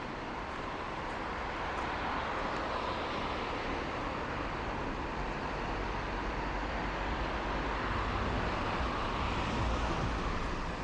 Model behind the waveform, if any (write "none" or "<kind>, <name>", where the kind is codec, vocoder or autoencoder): none